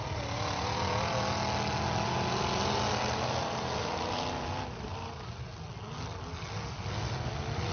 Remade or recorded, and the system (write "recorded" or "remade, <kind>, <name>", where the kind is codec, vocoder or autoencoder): recorded